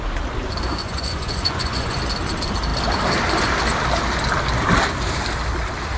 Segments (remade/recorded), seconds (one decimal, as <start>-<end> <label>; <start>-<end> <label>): 0.0-0.8 recorded; 0.8-2.0 remade; 2.0-6.0 recorded